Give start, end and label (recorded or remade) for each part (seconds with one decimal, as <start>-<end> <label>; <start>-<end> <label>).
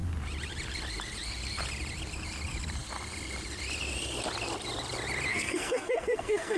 0.0-5.3 recorded; 5.3-6.6 remade